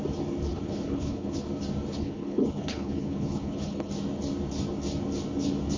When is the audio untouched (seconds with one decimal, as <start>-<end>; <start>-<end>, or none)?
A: 0.0-0.5; 1.4-1.9; 3.9-5.8